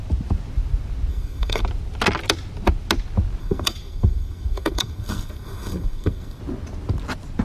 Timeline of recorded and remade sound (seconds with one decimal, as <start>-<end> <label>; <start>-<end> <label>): 0.0-1.1 recorded; 1.1-1.6 remade; 1.6-3.4 recorded; 3.4-6.4 remade; 6.4-7.4 recorded